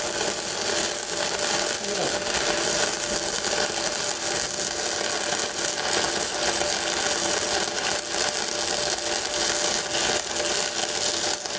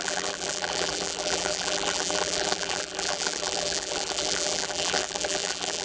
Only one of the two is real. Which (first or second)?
first